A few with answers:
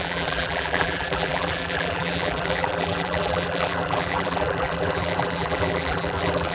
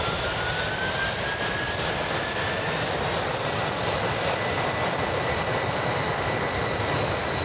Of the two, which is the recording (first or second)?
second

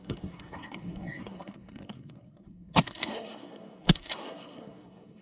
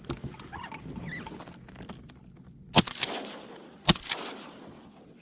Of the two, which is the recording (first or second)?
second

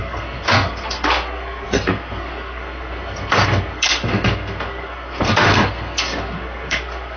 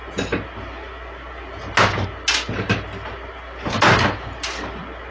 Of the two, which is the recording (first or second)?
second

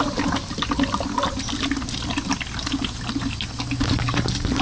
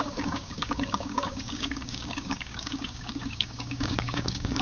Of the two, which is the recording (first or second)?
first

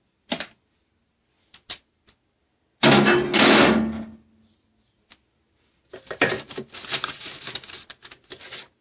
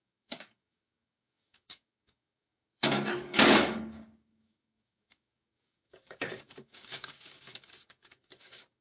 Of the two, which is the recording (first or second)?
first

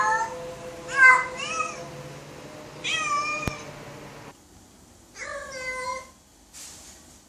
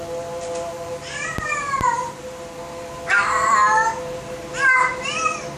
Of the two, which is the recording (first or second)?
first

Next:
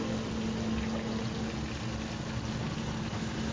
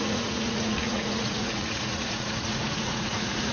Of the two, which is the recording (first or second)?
first